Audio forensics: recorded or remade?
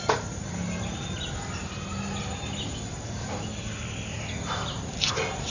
recorded